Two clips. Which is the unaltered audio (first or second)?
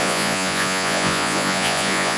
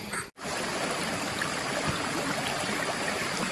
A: second